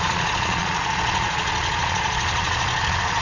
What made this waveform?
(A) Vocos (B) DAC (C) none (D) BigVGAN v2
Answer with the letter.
A